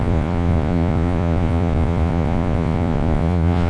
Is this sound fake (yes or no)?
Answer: yes